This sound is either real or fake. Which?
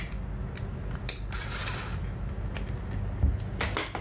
real